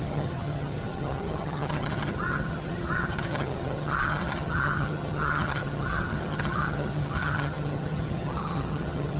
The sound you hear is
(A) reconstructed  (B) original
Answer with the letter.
A